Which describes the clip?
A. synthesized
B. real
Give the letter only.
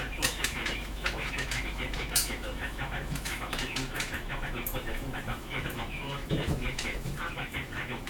A